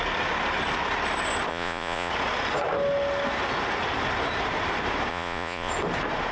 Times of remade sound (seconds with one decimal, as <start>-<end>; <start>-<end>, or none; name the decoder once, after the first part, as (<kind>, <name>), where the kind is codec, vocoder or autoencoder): 1.5-2.1 (vocoder, Vocos); 5.1-5.7

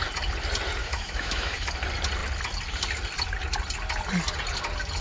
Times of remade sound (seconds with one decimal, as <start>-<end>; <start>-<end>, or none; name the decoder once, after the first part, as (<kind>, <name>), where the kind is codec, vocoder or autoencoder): 0.8-1.7 (autoencoder, DAC-VAE)

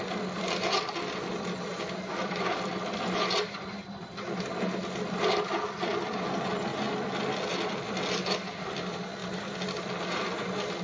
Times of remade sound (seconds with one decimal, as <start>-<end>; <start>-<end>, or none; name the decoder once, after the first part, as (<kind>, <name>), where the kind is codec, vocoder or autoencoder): 1.7-2.7 (vocoder, BigVGAN v2)